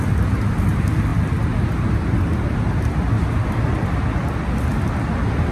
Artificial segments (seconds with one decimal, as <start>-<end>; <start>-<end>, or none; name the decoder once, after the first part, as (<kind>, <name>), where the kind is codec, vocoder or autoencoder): none